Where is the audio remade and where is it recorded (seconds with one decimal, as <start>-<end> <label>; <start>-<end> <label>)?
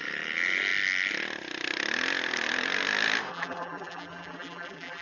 0.0-3.3 recorded; 3.3-5.0 remade